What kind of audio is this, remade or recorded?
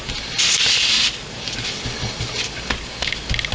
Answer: recorded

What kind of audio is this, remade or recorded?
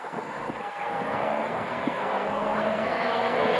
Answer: remade